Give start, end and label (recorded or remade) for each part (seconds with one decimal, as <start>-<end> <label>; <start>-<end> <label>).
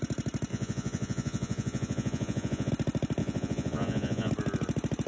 0.0-0.5 recorded; 0.5-2.7 remade; 2.7-3.2 recorded; 3.2-4.3 remade; 4.3-5.1 recorded